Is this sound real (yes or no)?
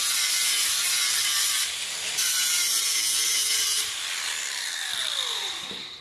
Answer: no